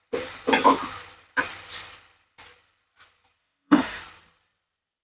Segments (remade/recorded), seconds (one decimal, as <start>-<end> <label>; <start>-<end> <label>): 0.0-3.4 recorded; 3.4-4.0 remade; 4.0-5.0 recorded

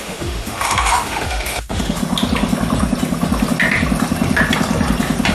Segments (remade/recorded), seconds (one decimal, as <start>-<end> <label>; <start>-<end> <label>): 0.0-2.0 remade; 2.0-5.3 recorded

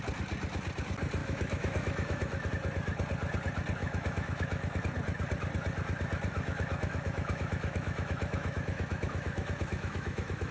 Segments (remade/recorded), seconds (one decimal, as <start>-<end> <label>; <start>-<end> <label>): 0.0-1.2 recorded; 1.2-2.5 remade; 2.5-3.8 recorded; 3.8-4.8 remade; 4.8-6.3 recorded; 6.3-10.5 remade

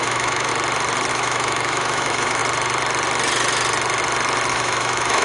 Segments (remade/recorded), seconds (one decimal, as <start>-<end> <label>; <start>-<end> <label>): 0.0-0.5 remade; 0.5-1.1 recorded; 1.1-2.4 remade; 2.4-4.5 recorded; 4.5-5.2 remade

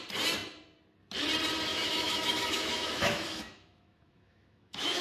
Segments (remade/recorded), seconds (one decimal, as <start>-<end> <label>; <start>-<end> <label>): 0.0-1.7 recorded; 1.7-5.0 remade

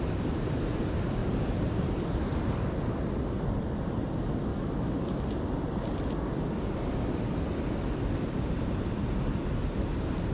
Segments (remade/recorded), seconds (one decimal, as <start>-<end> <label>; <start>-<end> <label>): 0.0-4.5 recorded; 4.5-5.2 remade; 5.2-10.3 recorded

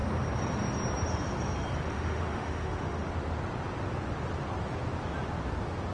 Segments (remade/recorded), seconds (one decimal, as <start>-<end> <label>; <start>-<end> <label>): 0.0-1.8 recorded; 1.8-3.1 remade; 3.1-5.9 recorded